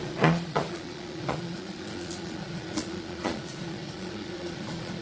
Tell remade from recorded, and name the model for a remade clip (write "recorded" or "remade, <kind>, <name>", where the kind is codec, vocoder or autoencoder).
remade, vocoder, Vocos